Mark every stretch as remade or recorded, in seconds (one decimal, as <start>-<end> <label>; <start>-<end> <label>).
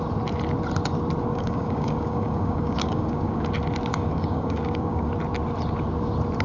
0.0-1.3 recorded; 1.3-3.5 remade; 3.5-3.9 recorded; 3.9-5.1 remade; 5.1-6.4 recorded